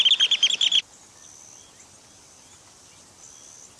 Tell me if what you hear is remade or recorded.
recorded